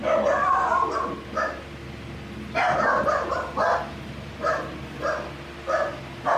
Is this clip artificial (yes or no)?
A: no